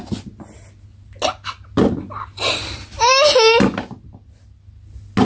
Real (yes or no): yes